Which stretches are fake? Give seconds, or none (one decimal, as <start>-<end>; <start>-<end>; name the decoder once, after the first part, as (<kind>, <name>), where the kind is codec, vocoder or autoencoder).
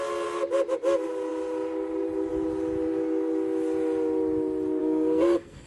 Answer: 4.8-5.7 (codec, SNAC)